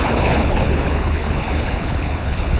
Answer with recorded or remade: remade